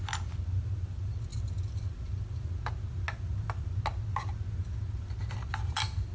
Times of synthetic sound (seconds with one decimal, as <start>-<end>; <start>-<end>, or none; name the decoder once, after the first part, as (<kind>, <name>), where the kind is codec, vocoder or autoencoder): none